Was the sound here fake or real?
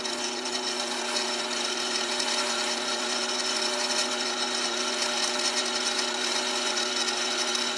fake